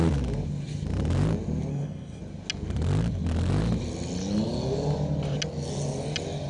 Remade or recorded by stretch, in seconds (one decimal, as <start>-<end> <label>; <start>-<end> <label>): 0.0-1.7 recorded; 1.7-2.2 remade; 2.2-6.5 recorded